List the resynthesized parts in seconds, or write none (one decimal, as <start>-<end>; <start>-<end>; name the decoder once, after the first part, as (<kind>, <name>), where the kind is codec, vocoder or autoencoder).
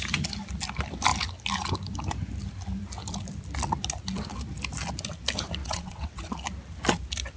5.6-6.2 (vocoder, WaveNeXt)